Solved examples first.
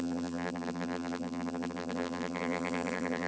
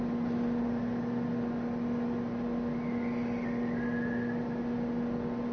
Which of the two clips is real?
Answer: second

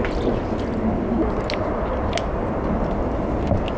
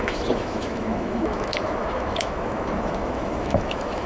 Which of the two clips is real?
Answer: first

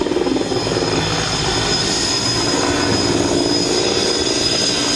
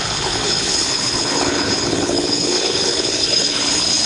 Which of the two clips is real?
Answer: first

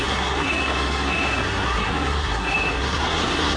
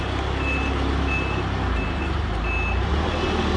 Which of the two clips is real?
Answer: second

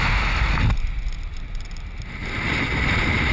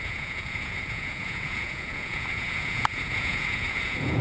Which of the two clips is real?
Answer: first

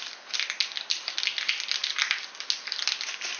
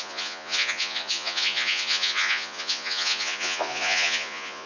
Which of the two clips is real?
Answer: first